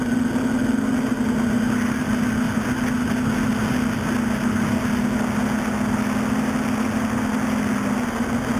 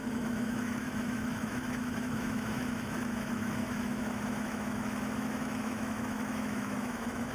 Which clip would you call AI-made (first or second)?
second